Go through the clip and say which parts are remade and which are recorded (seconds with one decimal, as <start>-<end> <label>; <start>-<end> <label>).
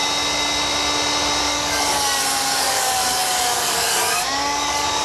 0.0-1.4 recorded; 1.4-5.0 remade